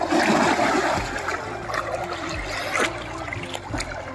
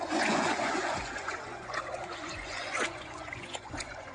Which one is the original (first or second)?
first